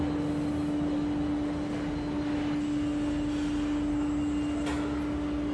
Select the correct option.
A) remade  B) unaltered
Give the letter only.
B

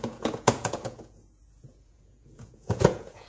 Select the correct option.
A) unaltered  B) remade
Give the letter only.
B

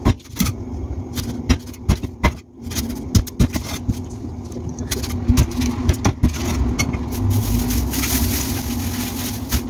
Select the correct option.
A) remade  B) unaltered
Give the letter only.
B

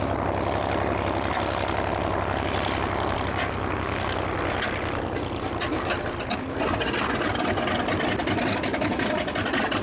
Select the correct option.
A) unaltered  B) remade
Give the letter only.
A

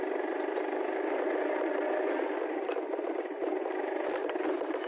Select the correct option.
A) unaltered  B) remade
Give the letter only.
A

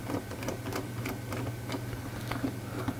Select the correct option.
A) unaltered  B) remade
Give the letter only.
A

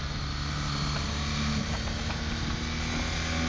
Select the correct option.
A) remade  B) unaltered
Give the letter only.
B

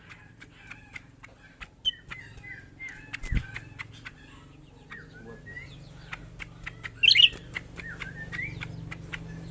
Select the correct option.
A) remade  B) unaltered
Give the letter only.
B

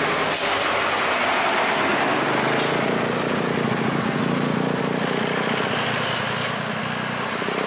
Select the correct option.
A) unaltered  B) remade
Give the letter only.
A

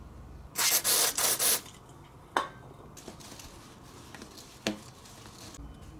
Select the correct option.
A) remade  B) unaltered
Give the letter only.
B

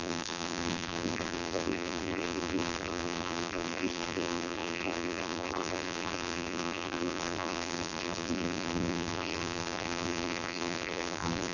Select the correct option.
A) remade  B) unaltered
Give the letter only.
A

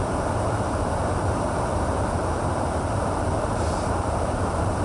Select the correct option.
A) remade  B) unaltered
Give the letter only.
A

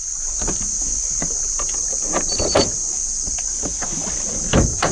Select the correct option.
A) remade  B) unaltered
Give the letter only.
B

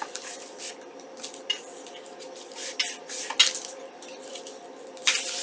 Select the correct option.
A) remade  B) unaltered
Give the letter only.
B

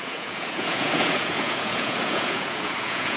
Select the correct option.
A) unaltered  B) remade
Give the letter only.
B